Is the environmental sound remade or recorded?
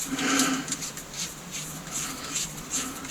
recorded